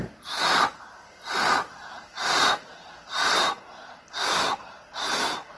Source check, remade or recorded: remade